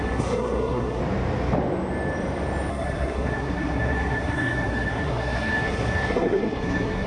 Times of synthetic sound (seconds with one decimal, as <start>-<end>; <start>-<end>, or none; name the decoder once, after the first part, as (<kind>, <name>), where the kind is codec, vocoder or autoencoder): 0.0-1.0 (codec, SNAC); 2.7-7.1